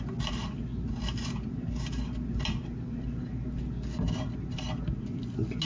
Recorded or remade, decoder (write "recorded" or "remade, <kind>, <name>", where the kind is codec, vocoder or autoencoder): recorded